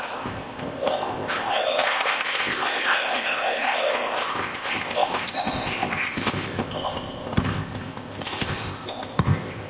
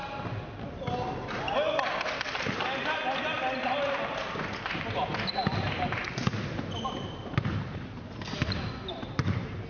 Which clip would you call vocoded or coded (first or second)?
first